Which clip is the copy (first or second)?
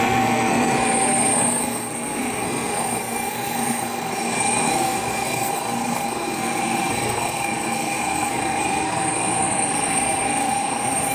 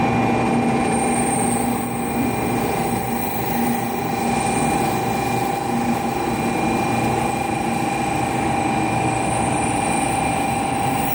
first